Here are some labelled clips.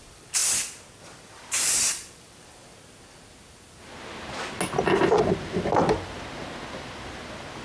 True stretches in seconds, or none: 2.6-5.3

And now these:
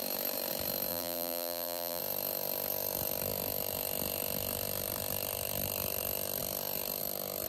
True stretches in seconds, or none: 0.0-0.9; 2.0-7.5

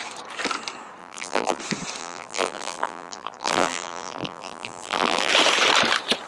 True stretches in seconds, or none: 0.0-1.0; 1.6-2.0; 5.3-6.3